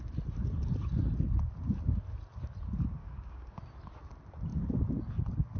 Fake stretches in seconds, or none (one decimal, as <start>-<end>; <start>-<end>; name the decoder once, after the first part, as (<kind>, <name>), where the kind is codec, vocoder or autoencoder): 3.0-3.6 (codec, DAC)